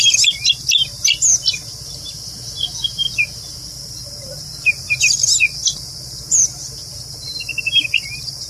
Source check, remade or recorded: recorded